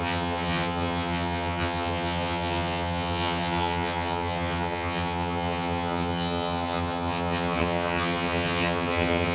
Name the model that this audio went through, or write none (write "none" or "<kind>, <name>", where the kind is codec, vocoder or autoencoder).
vocoder, HiFi-GAN